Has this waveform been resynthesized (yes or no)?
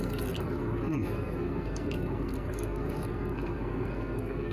yes